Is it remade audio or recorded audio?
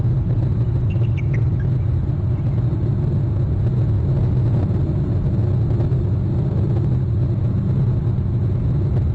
recorded